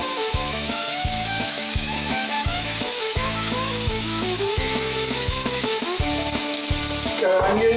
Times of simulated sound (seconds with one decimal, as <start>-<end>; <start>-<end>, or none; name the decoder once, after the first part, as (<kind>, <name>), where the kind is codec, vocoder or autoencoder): 0.0-5.8 (autoencoder, DAC-VAE)